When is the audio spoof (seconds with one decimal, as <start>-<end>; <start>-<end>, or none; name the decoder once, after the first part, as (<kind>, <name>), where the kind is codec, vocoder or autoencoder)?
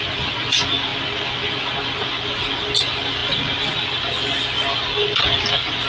none